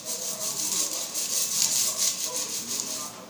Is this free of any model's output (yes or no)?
yes